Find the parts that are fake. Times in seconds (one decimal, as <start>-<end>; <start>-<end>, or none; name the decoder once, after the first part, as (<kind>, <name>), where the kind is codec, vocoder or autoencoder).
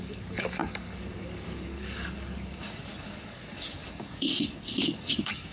0.0-5.5 (codec, DAC)